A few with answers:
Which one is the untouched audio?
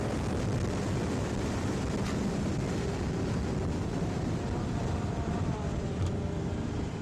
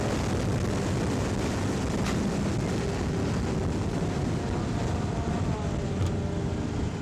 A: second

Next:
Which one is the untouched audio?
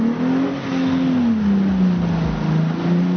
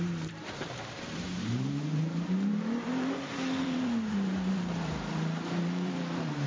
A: first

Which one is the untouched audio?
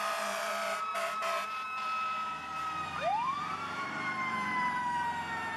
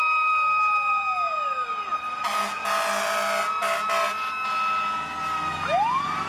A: second